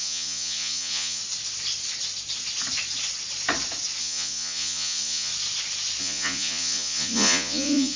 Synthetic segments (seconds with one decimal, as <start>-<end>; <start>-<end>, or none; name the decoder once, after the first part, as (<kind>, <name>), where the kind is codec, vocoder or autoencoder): 0.0-1.2 (vocoder, Vocos); 4.0-5.3; 6.0-8.0